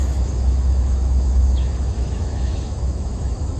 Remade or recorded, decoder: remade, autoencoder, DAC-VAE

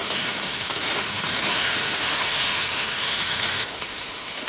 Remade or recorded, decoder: remade, autoencoder, DAC-VAE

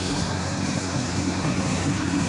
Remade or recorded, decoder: remade, codec, SNAC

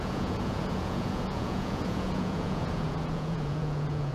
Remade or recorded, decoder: remade, vocoder, Vocos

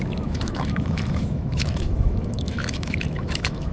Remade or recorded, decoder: remade, autoencoder, DAC-VAE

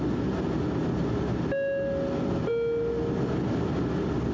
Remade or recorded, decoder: recorded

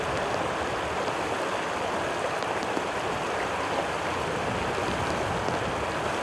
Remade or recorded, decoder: recorded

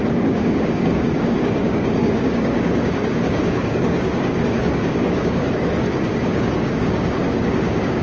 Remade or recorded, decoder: remade, codec, DAC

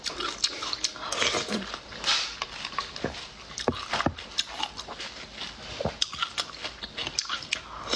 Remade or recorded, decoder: recorded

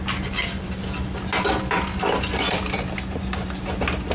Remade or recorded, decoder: recorded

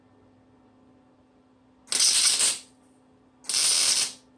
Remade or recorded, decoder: recorded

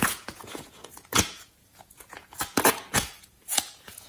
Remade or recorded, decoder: remade, vocoder, Vocos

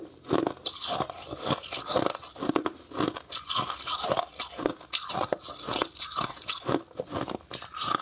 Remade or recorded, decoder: recorded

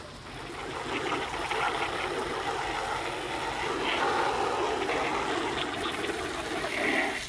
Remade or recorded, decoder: recorded